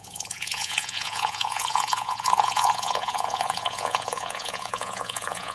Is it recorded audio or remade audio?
remade